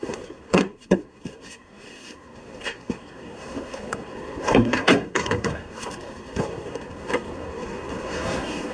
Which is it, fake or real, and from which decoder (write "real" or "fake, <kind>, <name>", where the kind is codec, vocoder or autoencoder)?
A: fake, codec, SNAC